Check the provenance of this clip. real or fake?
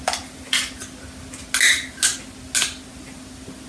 real